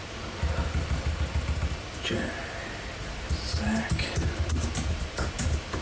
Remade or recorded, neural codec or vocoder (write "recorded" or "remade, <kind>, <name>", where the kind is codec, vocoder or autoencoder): recorded